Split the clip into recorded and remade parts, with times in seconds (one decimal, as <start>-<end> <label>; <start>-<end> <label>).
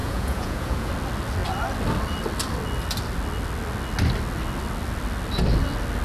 0.0-0.9 remade; 0.9-6.0 recorded